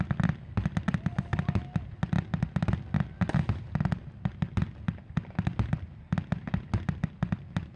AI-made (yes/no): no